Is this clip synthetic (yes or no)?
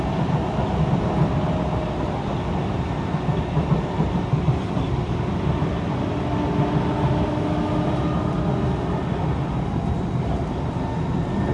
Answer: no